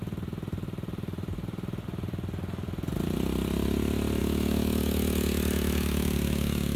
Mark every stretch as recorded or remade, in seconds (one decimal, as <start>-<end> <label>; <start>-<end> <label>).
0.0-4.2 recorded; 4.2-6.8 remade